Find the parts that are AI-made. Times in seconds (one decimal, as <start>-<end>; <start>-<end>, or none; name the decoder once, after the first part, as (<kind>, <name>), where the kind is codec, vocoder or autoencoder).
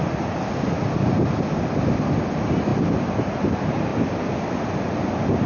none